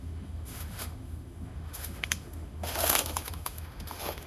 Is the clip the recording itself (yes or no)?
no